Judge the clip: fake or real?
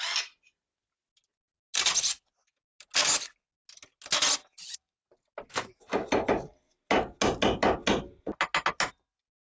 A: real